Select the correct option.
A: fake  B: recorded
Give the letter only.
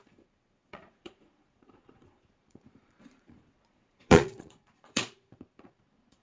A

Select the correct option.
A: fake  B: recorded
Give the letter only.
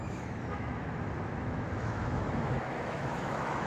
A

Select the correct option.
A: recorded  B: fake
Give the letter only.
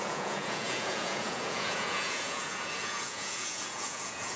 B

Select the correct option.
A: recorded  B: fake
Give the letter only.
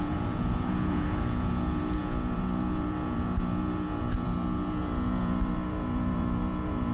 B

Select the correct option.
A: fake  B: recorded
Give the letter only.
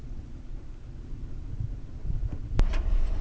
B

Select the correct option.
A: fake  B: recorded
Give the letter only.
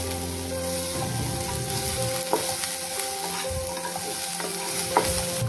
B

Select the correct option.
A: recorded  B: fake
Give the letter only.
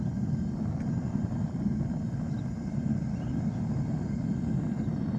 A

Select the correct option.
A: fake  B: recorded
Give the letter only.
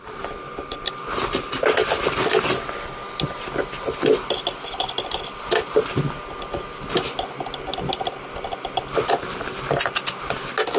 B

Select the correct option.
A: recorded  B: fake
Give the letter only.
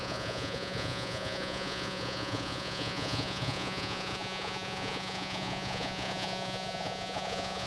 B